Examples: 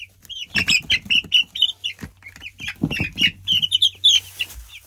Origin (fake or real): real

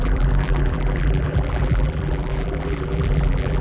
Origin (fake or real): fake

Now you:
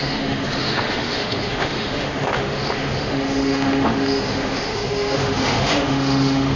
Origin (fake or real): fake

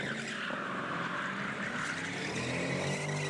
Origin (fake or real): real